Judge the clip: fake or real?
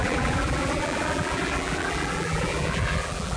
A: fake